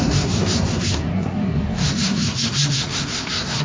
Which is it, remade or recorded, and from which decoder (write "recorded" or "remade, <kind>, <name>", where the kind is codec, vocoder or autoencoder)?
remade, codec, SNAC